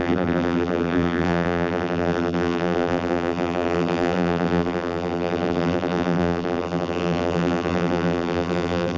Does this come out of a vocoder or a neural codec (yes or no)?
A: yes